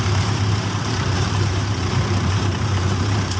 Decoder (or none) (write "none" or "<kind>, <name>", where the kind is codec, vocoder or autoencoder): vocoder, BigVGAN v2